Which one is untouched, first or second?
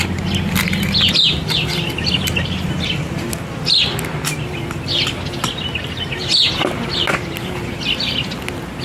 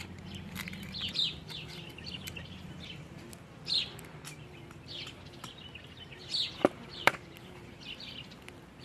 first